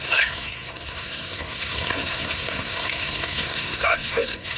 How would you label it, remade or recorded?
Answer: remade